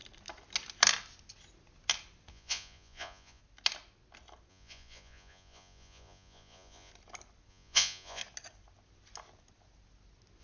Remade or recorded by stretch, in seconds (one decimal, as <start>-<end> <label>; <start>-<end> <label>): 0.0-2.3 recorded; 2.3-3.4 remade; 3.4-4.5 recorded; 4.5-6.9 remade; 6.9-7.5 recorded; 7.5-8.2 remade; 8.2-10.4 recorded